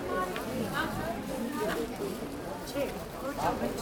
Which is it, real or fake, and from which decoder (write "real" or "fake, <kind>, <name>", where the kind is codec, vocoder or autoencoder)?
fake, vocoder, BigVGAN v2